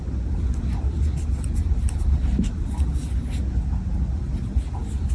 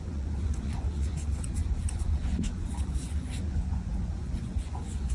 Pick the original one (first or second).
first